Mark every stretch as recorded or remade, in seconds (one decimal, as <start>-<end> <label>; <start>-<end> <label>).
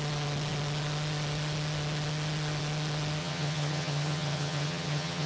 0.0-3.2 recorded; 3.2-5.3 remade